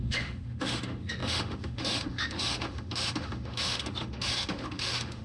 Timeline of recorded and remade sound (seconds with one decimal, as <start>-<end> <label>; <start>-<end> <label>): 0.0-5.2 remade